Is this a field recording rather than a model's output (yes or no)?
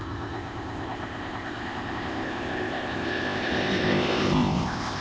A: no